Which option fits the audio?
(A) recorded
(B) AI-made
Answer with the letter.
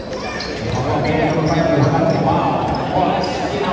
A